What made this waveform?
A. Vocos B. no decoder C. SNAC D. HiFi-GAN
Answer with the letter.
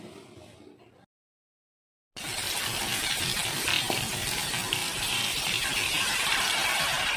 B